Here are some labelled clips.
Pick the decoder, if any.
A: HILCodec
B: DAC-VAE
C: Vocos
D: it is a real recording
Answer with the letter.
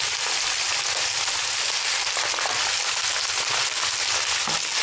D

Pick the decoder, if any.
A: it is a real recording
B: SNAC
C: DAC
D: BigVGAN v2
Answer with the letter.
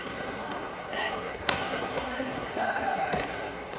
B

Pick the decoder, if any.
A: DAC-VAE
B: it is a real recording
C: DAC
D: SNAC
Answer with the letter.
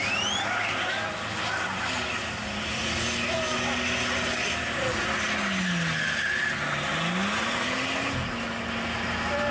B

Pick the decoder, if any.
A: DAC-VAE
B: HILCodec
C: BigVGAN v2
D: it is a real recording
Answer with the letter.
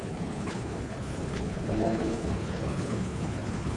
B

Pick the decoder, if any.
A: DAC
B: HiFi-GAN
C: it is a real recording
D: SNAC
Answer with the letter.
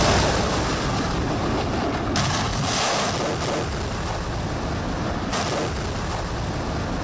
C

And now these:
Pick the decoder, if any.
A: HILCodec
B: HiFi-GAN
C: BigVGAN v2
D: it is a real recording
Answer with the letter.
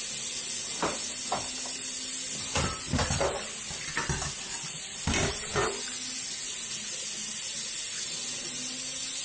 D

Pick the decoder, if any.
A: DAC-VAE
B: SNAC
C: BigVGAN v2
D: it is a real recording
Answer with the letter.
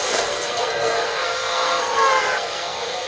B